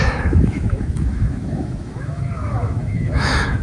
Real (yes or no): no